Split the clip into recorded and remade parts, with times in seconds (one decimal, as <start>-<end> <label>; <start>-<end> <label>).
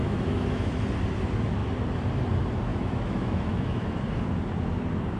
0.0-0.7 remade; 0.7-2.7 recorded; 2.7-4.0 remade; 4.0-5.2 recorded